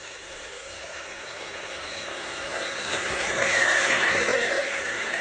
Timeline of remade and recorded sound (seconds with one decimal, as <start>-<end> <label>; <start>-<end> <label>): 0.0-5.2 remade